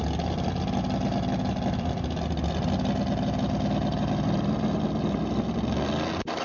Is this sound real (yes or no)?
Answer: yes